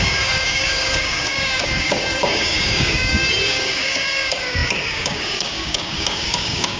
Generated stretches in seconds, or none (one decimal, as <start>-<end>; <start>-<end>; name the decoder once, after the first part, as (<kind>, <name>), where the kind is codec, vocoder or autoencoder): 0.0-6.8 (codec, DAC)